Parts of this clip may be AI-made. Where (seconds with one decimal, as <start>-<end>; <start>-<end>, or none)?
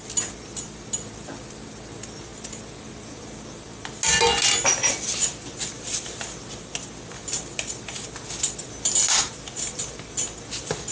none